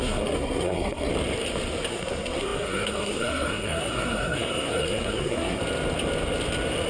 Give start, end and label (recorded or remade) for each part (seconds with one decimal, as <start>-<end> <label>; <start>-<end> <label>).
0.0-1.1 remade; 1.1-1.9 recorded; 1.9-5.6 remade; 5.6-6.9 recorded